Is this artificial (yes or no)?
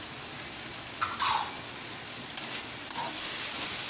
no